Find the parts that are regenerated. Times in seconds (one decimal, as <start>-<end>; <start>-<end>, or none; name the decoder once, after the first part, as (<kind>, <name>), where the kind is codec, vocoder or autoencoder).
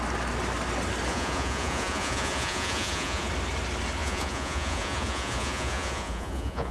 1.1-3.3 (vocoder, Vocos); 4.0-6.7